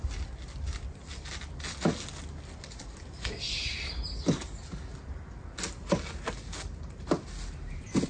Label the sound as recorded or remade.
recorded